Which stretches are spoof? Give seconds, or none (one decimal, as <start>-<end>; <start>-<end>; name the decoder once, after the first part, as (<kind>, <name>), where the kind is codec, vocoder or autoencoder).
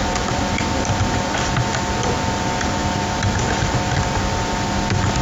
none